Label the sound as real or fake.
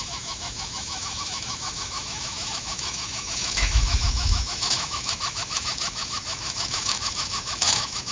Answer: fake